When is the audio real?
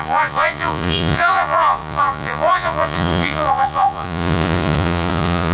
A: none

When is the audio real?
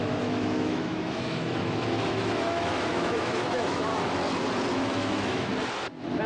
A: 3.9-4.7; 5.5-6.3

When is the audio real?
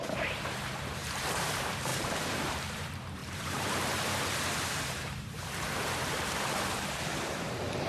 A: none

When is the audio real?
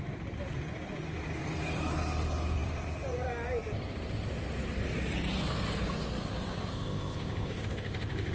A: 0.0-6.7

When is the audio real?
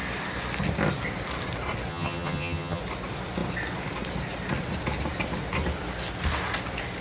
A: 0.0-1.9; 2.8-7.0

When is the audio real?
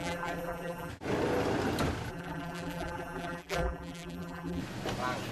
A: 0.9-2.1; 4.6-5.3